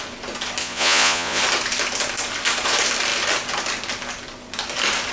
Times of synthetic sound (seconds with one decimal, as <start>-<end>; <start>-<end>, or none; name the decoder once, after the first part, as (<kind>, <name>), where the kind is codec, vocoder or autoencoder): 0.6-1.4 (vocoder, Vocos)